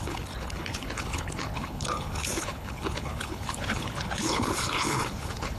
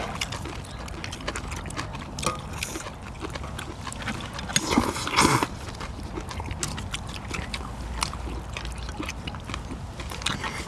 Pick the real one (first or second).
second